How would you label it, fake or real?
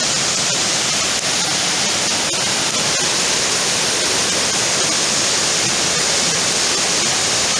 real